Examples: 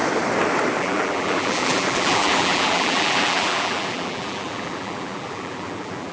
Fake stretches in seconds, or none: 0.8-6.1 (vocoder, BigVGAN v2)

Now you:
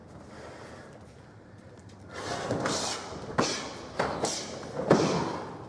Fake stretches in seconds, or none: none

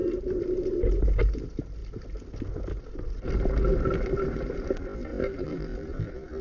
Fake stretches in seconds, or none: 0.0-1.0 (vocoder, BigVGAN v2); 3.7-4.5; 5.1-6.0

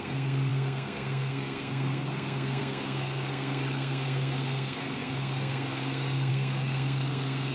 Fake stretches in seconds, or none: 0.0-7.5 (codec, SNAC)

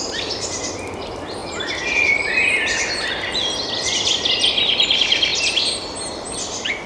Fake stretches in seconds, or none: 0.0-5.3 (vocoder, BigVGAN v2); 6.0-6.9